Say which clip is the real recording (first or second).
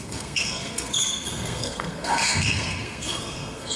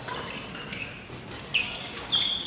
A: second